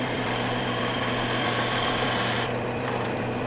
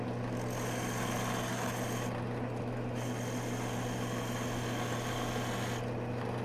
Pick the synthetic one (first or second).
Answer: first